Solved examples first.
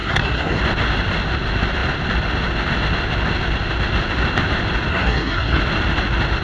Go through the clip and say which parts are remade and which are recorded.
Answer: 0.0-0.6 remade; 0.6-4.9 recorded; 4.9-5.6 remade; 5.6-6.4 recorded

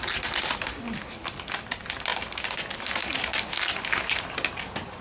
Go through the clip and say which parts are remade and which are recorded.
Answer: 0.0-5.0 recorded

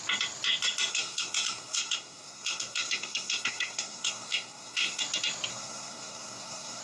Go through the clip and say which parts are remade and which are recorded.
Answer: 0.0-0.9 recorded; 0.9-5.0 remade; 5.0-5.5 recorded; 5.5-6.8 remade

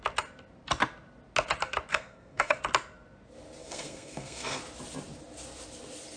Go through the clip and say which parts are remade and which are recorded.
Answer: 0.0-1.9 recorded; 1.9-2.6 remade; 2.6-3.6 recorded; 3.6-4.6 remade; 4.6-6.2 recorded

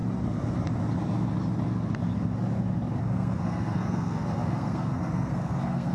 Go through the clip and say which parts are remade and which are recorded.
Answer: 0.0-3.0 recorded; 3.0-5.9 remade

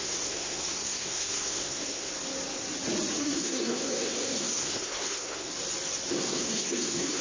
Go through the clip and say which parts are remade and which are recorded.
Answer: 0.0-2.1 remade; 2.1-3.2 recorded; 3.2-5.5 remade; 5.5-6.1 recorded; 6.1-7.2 remade